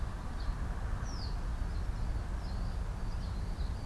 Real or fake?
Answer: real